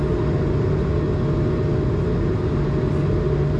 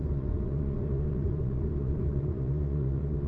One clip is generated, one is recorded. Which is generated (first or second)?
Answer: second